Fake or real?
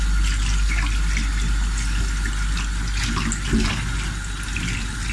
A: real